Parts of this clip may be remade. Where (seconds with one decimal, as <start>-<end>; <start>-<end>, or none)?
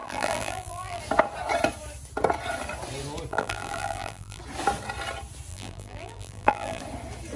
0.0-1.0; 3.3-4.4; 5.5-6.8